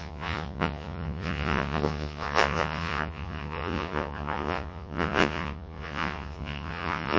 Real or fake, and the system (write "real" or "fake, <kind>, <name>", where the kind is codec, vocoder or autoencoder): fake, vocoder, Vocos